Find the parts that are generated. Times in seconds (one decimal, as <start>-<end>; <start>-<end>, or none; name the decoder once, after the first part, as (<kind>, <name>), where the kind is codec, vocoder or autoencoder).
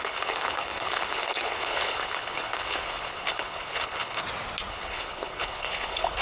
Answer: 0.0-4.2 (codec, HILCodec); 4.7-6.2